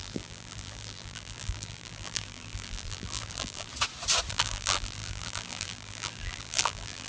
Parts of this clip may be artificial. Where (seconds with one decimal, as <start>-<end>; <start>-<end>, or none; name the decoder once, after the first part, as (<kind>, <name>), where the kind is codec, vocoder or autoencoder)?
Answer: 0.0-3.7 (vocoder, BigVGAN v2); 4.3-7.1

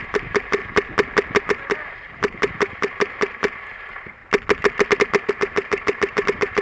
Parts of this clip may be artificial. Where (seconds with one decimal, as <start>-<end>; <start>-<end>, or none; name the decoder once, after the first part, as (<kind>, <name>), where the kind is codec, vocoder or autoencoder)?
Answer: 0.0-0.6 (vocoder, BigVGAN v2); 1.4-4.2; 5.3-6.6

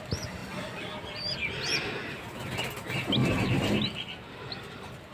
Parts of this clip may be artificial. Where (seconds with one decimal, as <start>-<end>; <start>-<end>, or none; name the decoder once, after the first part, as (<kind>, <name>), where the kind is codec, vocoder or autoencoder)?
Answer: 3.2-3.8 (vocoder, BigVGAN v2)

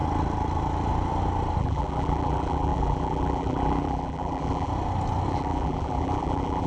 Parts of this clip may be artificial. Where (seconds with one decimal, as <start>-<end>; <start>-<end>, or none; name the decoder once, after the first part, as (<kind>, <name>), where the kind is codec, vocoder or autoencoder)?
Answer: 1.6-4.7 (vocoder, BigVGAN v2); 5.3-6.7

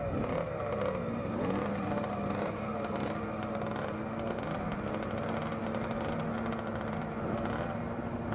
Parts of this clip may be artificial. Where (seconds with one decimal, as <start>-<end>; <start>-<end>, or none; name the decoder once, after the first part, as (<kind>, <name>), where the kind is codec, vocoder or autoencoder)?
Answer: none

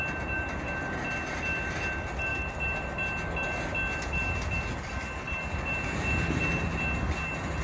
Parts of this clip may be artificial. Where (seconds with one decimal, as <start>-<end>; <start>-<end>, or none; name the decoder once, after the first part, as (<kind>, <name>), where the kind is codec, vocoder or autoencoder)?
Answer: none

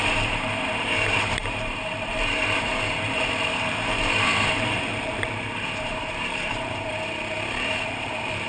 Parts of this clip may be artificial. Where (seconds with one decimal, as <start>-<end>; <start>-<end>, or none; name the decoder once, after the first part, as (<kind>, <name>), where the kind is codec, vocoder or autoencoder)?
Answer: 0.0-8.5 (vocoder, BigVGAN v2)